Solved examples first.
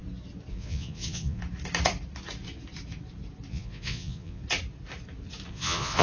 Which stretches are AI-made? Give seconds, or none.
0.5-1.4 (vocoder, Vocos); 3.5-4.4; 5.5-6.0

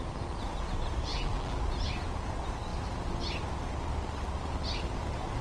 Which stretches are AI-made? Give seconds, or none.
1.1-1.6 (vocoder, BigVGAN v2)

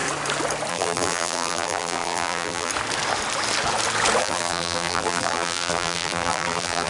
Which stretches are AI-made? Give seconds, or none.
0.7-2.7 (vocoder, BigVGAN v2); 4.2-6.9

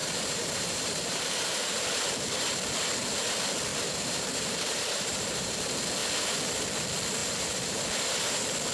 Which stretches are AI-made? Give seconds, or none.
0.0-1.9 (vocoder, BigVGAN v2); 3.7-5.6; 7.2-7.8

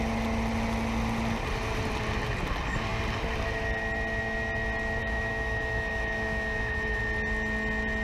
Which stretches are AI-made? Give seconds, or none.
5.0-7.0 (autoencoder, DAC-VAE)